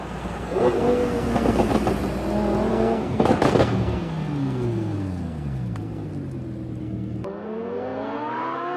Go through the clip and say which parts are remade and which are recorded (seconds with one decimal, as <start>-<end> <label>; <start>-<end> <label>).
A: 0.0-1.7 remade; 1.7-2.7 recorded; 2.7-6.1 remade; 6.1-6.8 recorded; 6.8-8.8 remade